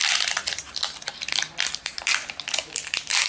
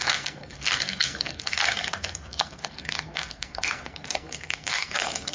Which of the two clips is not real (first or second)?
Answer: second